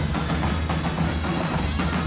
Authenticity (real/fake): real